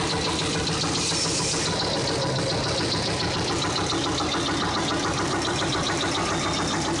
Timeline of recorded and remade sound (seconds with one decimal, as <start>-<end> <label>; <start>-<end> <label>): 0.0-4.9 recorded; 4.9-5.7 remade; 5.7-7.0 recorded